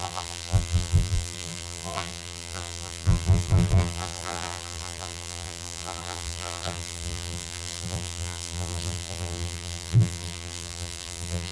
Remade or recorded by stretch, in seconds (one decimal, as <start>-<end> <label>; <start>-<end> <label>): 0.0-11.5 remade